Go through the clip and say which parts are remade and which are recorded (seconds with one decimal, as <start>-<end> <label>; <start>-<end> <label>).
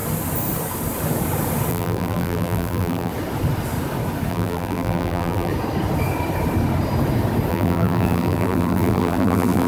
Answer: 0.0-1.7 recorded; 1.7-3.1 remade; 3.1-4.3 recorded; 4.3-5.5 remade; 5.5-7.5 recorded; 7.5-9.7 remade